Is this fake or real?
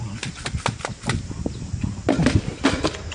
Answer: real